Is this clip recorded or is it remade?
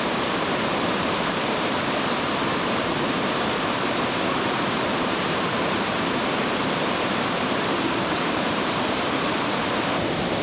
remade